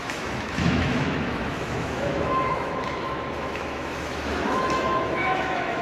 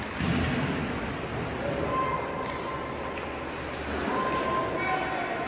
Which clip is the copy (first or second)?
first